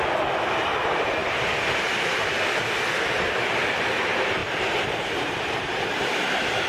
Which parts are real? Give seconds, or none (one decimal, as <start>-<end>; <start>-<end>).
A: 0.0-4.4